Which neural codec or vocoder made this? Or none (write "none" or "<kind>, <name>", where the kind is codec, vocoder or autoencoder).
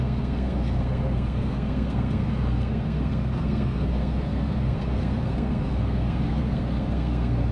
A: codec, SNAC